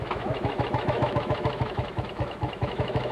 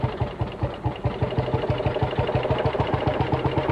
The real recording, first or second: second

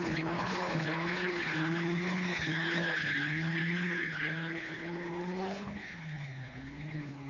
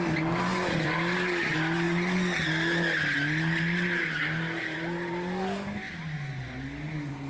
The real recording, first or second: second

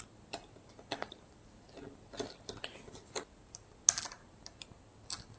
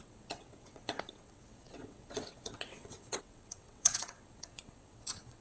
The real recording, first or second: first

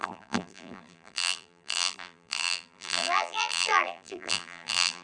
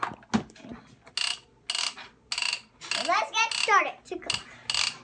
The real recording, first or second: second